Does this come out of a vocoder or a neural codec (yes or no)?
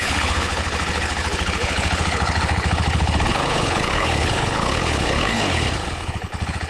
yes